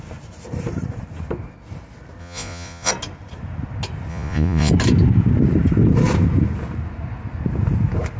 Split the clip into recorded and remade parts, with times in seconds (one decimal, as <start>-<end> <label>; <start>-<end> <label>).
0.0-2.2 recorded; 2.2-2.9 remade; 2.9-4.1 recorded; 4.1-4.7 remade; 4.7-8.2 recorded